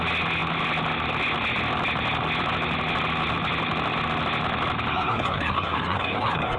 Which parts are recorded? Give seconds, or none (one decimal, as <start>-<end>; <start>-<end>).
0.0-4.9